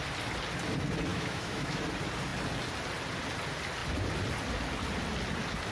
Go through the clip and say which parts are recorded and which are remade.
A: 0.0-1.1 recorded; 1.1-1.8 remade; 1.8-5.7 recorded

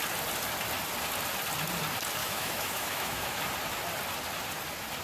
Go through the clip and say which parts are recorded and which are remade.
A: 0.0-2.2 recorded; 2.2-3.4 remade; 3.4-5.0 recorded

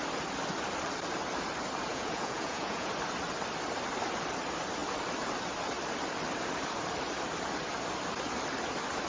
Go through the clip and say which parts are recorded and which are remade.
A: 0.0-1.9 recorded; 1.9-2.9 remade; 2.9-9.1 recorded